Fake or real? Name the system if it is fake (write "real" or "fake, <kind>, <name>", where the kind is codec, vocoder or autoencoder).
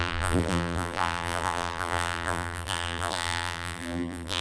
fake, vocoder, BigVGAN v2